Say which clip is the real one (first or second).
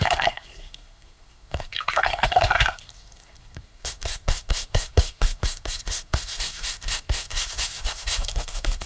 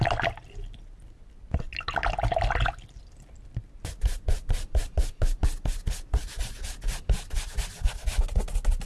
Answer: second